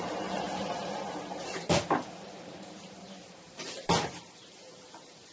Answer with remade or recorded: remade